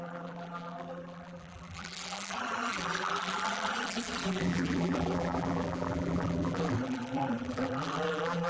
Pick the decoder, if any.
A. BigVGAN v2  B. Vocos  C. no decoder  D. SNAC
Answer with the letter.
A